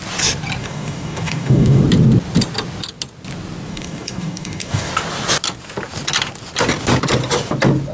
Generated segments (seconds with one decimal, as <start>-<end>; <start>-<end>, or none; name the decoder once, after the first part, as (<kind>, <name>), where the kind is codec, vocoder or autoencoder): 0.6-1.8 (codec, DAC); 3.7-4.9